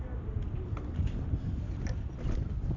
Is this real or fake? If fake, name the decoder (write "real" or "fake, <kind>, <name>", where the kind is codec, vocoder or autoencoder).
real